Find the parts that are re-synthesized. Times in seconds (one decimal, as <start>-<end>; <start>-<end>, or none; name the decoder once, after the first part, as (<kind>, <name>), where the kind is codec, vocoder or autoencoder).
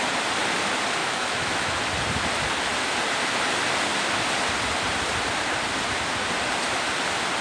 1.0-1.8 (autoencoder, DAC-VAE)